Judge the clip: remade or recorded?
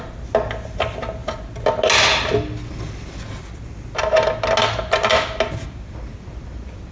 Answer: recorded